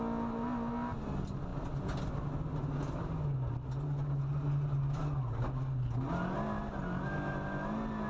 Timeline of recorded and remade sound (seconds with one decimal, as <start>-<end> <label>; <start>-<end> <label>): 0.0-8.1 recorded